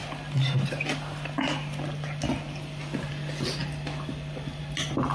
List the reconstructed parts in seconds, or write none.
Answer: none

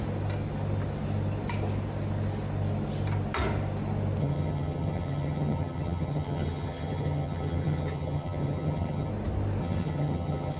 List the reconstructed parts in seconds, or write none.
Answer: 4.2-9.1 (vocoder, HiFi-GAN); 9.6-10.6

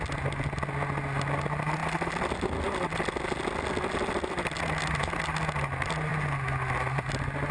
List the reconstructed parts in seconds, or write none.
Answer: none